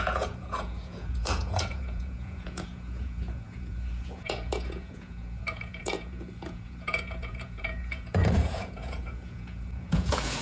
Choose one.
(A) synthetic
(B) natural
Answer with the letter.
A